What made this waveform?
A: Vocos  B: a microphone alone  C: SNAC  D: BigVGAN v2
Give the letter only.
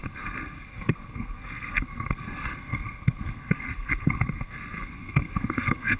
C